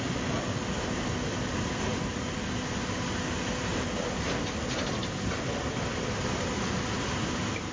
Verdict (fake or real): real